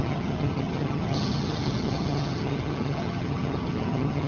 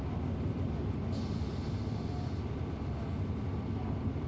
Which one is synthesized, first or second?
first